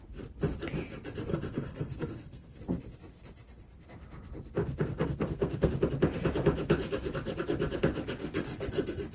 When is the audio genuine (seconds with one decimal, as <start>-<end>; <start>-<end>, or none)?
0.0-1.3; 2.6-4.6; 5.7-9.1